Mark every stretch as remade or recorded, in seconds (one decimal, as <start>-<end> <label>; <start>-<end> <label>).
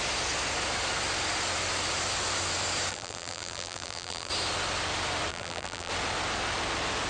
0.0-2.9 recorded; 2.9-4.3 remade; 4.3-5.3 recorded; 5.3-5.9 remade; 5.9-7.1 recorded